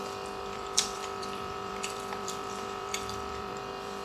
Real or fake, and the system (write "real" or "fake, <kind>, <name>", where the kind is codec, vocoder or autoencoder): fake, vocoder, BigVGAN v2